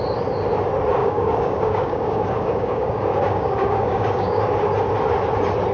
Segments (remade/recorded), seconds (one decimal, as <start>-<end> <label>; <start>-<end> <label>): 0.0-1.0 recorded; 1.0-4.4 remade; 4.4-5.7 recorded